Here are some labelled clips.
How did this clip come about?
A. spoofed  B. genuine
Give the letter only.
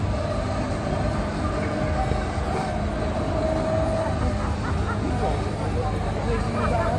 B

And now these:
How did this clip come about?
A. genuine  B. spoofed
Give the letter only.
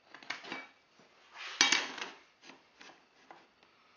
A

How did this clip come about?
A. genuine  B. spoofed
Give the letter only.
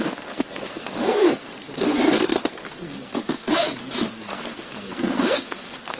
B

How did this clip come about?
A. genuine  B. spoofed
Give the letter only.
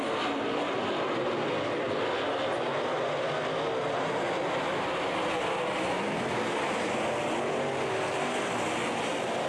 A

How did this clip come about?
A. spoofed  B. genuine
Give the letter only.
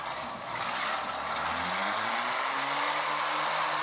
B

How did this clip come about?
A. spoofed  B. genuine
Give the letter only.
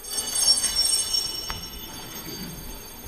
A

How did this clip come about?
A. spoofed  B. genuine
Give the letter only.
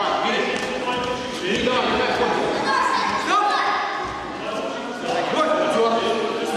B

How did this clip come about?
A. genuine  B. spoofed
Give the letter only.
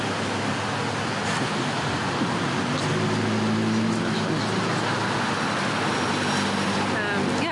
A